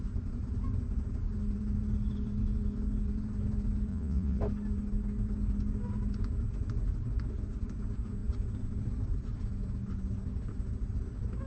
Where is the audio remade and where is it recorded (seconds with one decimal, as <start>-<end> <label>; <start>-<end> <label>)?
0.0-3.9 recorded; 3.9-4.4 remade; 4.4-11.5 recorded